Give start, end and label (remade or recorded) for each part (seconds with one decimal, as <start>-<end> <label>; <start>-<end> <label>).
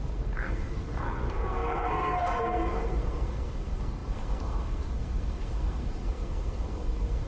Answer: 0.0-7.3 remade